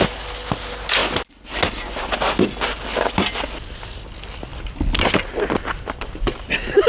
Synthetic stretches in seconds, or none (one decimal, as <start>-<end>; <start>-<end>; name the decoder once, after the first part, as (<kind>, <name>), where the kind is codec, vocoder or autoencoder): none